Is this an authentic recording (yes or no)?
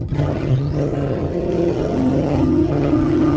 no